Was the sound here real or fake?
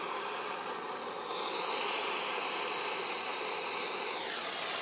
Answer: real